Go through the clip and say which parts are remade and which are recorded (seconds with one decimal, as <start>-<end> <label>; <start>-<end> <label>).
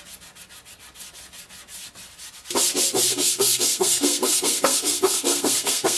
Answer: 0.0-3.1 recorded; 3.1-6.0 remade